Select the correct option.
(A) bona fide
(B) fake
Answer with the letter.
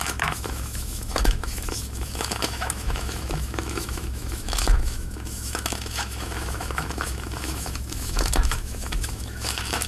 B